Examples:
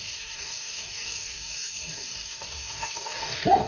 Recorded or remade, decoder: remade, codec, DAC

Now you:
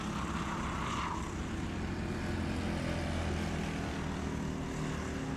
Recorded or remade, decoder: recorded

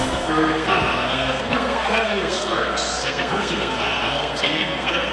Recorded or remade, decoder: remade, codec, SNAC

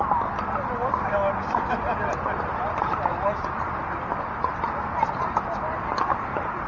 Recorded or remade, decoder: recorded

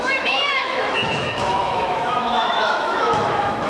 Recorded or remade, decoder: remade, autoencoder, DAC-VAE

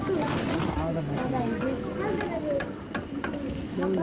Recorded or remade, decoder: recorded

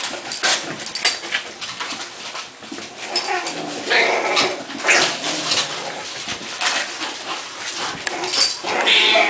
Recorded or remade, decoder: recorded